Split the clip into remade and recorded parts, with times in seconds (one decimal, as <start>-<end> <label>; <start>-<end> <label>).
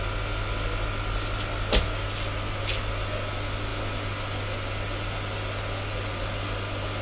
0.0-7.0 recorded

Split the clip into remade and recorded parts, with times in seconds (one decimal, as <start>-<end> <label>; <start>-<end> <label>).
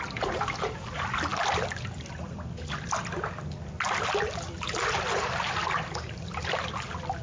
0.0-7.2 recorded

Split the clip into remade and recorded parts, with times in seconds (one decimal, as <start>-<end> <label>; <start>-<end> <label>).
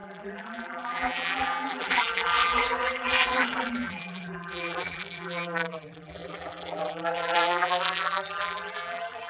0.0-9.3 remade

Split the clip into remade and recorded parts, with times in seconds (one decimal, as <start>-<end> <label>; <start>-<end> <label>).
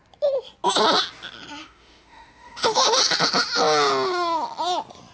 0.0-1.6 recorded; 1.6-3.0 remade; 3.0-5.1 recorded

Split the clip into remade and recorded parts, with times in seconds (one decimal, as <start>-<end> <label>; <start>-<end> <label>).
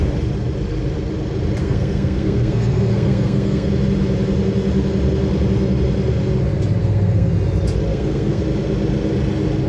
0.0-1.6 recorded; 1.6-3.7 remade; 3.7-6.8 recorded; 6.8-7.3 remade; 7.3-7.9 recorded; 7.9-8.4 remade; 8.4-9.7 recorded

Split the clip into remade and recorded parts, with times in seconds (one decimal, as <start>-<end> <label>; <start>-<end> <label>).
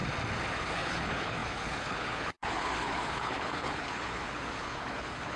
0.0-0.6 recorded; 0.6-5.4 remade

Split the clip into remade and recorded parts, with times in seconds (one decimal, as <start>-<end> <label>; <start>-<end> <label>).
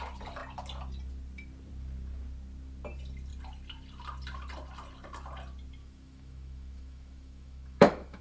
0.0-5.8 recorded; 5.8-8.2 remade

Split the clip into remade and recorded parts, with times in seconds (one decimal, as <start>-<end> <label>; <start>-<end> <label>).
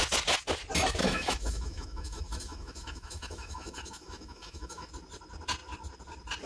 0.0-1.0 recorded; 1.0-4.9 remade; 4.9-6.5 recorded